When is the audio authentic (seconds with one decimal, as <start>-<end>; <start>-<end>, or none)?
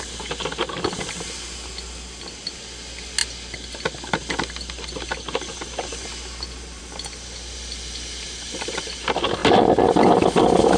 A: 0.0-10.8